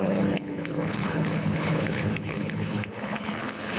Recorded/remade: remade